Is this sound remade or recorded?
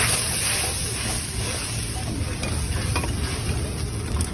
recorded